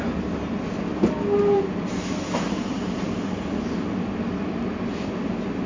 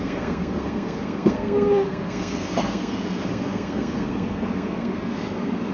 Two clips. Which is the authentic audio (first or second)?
first